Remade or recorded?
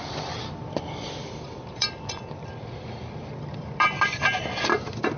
remade